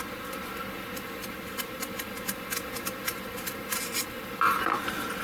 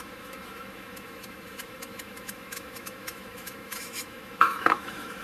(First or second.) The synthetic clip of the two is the second